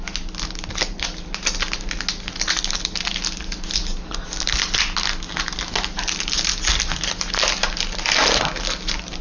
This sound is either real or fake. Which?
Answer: real